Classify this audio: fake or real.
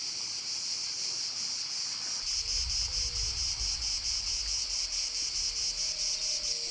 real